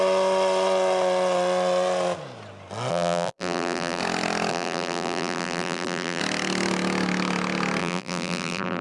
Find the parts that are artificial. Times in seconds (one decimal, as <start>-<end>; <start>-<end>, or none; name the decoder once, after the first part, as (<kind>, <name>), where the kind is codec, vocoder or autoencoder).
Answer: 2.9-4.0 (vocoder, BigVGAN v2); 4.5-6.2; 7.8-8.8